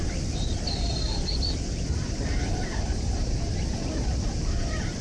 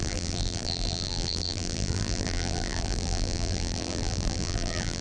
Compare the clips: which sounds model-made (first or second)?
second